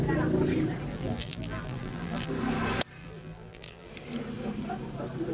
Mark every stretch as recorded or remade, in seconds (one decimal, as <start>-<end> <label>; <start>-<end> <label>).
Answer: 0.0-0.9 recorded; 0.9-2.3 remade; 2.3-3.0 recorded; 3.0-3.9 remade; 3.9-5.3 recorded